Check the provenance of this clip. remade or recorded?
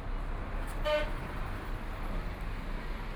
recorded